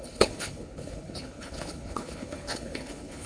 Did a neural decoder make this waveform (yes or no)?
yes